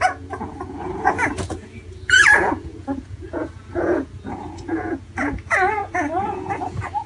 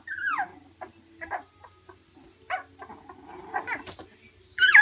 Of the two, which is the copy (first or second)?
first